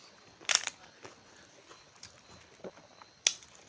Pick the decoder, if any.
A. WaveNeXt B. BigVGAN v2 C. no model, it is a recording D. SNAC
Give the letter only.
C